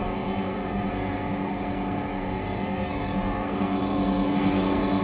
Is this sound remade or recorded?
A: remade